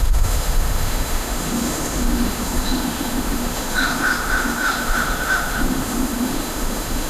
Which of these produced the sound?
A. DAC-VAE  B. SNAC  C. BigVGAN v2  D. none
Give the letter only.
A